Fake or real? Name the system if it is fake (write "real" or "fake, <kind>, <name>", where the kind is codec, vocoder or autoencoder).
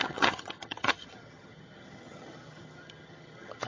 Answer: fake, vocoder, HiFi-GAN